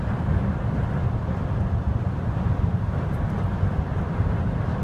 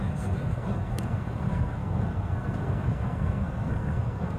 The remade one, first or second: second